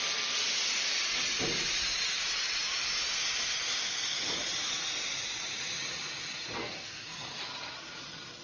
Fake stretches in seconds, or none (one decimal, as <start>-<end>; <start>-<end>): 6.6-7.4

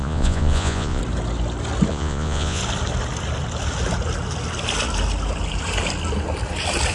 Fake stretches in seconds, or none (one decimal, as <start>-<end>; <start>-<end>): 0.0-1.0; 1.9-2.6

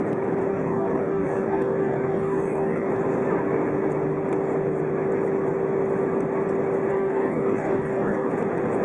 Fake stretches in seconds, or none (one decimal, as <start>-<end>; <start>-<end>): 0.5-2.9; 6.9-8.3

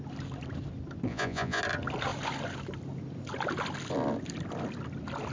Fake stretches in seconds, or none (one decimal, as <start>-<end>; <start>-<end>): 1.1-1.6

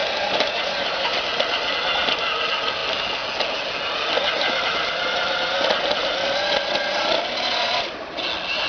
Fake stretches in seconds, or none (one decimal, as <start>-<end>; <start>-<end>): 0.0-1.2

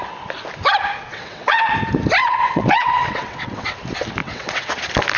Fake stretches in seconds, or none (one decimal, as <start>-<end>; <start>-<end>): 1.1-1.7; 2.2-3.8; 4.2-4.7